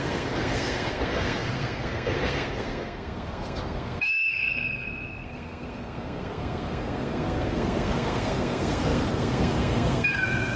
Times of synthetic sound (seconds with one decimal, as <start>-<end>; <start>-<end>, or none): 0.0-10.6